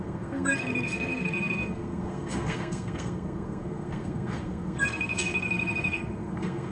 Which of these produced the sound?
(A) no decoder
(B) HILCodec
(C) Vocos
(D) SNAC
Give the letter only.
D